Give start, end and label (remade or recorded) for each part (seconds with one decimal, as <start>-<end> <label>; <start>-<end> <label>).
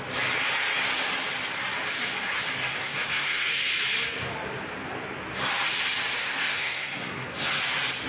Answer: 0.0-2.7 recorded; 2.7-3.6 remade; 3.6-6.2 recorded; 6.2-7.6 remade; 7.6-8.1 recorded